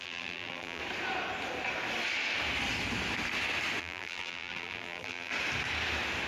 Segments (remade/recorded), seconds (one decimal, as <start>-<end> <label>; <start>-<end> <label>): 0.0-0.8 remade; 0.8-3.8 recorded; 3.8-5.3 remade; 5.3-6.3 recorded